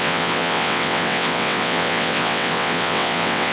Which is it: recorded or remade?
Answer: remade